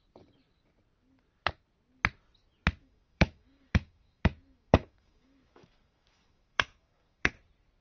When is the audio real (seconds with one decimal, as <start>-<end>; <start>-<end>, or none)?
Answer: 0.0-2.8; 7.3-7.8